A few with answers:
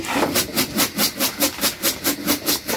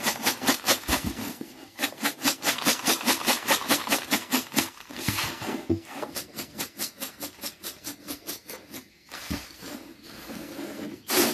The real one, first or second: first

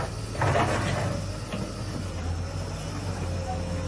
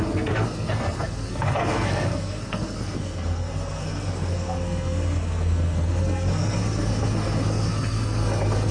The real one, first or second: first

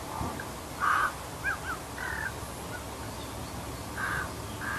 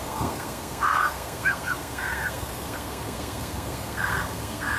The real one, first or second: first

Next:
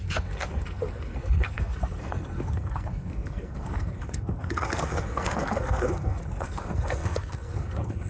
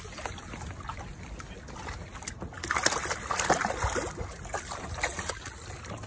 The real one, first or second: second